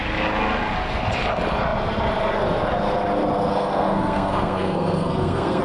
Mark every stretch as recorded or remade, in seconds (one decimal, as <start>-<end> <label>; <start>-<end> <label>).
0.0-3.5 recorded; 3.5-5.6 remade